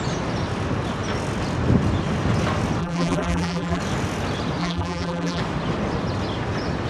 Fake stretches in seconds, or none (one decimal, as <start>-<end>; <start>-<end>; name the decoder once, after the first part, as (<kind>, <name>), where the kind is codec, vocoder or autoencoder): 2.8-3.8 (vocoder, BigVGAN v2); 4.6-5.4